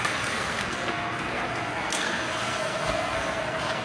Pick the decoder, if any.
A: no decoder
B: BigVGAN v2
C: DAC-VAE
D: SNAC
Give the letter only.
D